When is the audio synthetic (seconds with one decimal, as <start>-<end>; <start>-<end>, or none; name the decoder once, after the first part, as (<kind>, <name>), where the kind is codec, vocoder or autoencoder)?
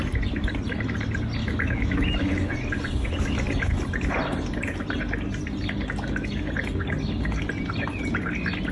1.4-2.5 (autoencoder, DAC-VAE)